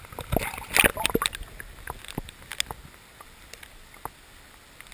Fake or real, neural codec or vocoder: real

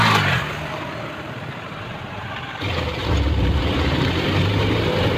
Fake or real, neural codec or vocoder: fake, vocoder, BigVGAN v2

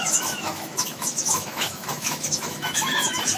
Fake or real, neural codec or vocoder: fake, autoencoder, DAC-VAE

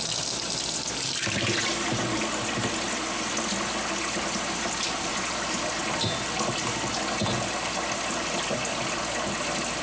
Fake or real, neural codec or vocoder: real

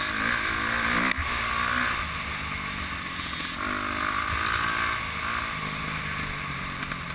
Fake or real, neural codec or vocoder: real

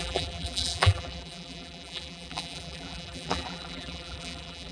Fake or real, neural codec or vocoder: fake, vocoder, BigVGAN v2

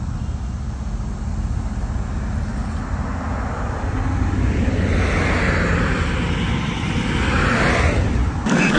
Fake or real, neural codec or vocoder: real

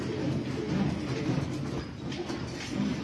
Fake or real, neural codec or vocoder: real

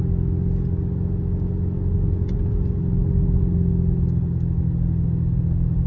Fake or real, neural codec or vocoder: real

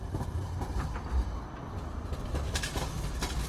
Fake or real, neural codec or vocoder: real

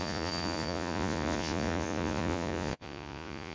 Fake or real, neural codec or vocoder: fake, vocoder, Vocos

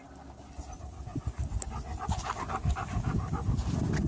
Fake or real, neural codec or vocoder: real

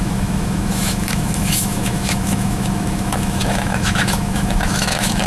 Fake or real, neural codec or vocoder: fake, autoencoder, DAC-VAE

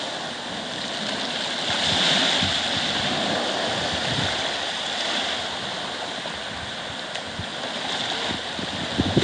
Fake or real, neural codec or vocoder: real